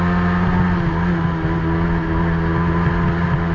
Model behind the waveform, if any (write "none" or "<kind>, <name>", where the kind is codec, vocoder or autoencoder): none